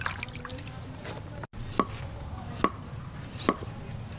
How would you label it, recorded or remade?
recorded